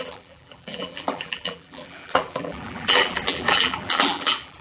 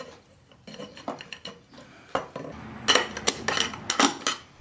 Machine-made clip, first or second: first